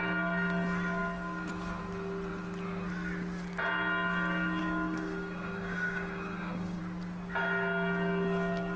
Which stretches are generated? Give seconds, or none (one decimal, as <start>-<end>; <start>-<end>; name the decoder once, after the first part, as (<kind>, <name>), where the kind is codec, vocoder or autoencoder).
4.6-6.8 (codec, DAC)